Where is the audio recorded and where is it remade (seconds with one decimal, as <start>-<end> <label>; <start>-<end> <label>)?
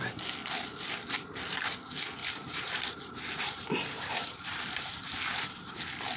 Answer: 0.0-2.2 recorded; 2.2-5.8 remade; 5.8-6.2 recorded